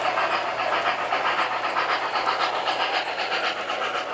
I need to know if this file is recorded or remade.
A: recorded